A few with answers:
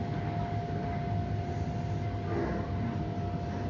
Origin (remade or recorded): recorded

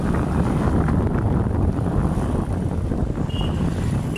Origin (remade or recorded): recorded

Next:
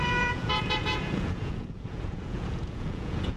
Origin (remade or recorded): remade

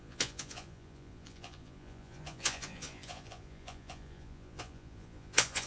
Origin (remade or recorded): remade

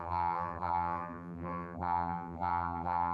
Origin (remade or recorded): remade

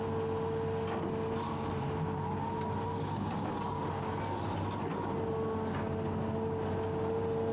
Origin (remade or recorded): recorded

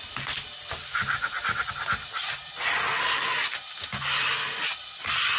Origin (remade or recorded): recorded